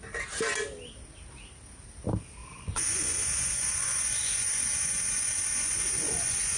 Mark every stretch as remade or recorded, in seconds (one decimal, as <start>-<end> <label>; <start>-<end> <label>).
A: 0.0-2.4 recorded; 2.4-6.6 remade